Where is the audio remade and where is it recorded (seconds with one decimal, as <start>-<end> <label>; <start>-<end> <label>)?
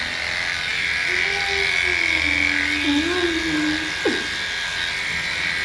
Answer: 0.0-5.6 recorded